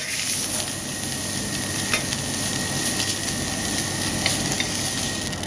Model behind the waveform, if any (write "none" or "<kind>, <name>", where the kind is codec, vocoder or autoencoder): none